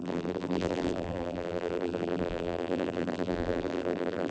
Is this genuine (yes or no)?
no